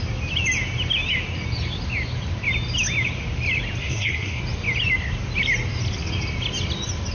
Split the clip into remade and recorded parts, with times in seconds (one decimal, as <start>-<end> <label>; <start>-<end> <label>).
0.0-3.8 recorded; 3.8-4.4 remade; 4.4-7.1 recorded